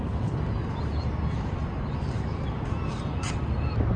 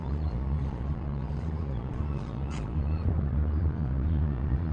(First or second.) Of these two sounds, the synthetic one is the second